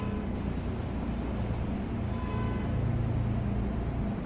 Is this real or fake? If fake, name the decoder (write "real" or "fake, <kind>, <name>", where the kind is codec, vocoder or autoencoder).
real